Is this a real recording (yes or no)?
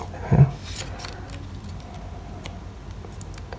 yes